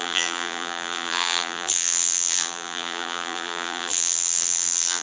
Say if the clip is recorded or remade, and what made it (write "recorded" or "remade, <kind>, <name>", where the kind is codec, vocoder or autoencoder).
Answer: remade, vocoder, BigVGAN v2